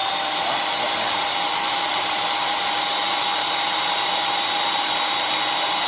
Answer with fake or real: fake